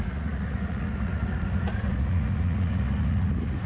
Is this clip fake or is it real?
fake